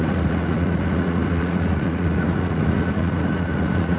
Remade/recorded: remade